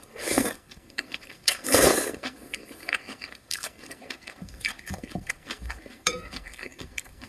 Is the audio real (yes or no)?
no